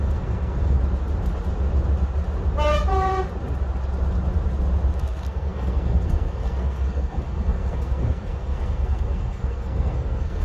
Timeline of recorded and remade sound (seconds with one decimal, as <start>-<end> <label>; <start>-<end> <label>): 0.0-0.8 remade; 0.8-5.0 recorded; 5.0-10.4 remade